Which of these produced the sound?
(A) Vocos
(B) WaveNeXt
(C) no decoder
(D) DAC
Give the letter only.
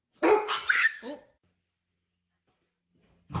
C